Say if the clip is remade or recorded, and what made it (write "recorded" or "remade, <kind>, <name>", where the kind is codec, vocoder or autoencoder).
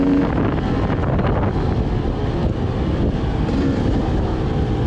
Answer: recorded